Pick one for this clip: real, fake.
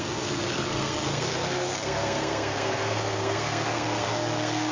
fake